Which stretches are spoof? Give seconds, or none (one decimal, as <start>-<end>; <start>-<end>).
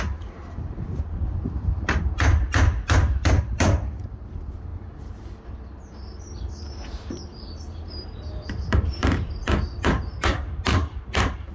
0.0-4.7; 5.8-9.4; 10.2-11.5